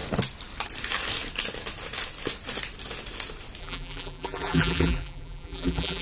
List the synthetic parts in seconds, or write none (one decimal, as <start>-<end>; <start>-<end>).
3.6-6.0